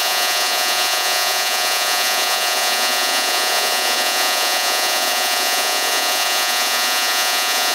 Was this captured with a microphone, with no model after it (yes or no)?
no